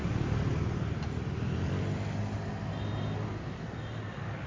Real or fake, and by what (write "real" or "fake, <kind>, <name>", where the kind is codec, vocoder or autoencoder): real